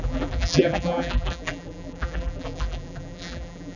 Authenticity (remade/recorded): remade